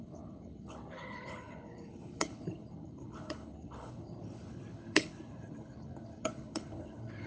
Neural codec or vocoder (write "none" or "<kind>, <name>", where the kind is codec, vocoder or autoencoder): codec, HILCodec